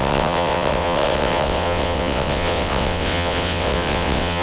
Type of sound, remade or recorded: remade